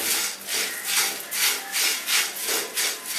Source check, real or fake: real